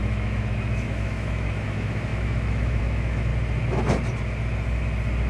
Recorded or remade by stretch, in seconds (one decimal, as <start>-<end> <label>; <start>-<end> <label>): 0.0-3.3 remade; 3.3-5.3 recorded